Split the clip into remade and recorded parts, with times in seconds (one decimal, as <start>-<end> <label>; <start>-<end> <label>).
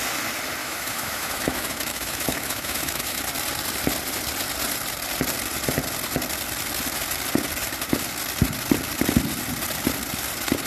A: 0.0-0.6 recorded; 0.6-3.2 remade; 3.2-10.7 recorded